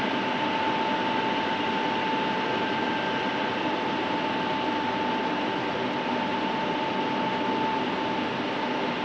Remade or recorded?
recorded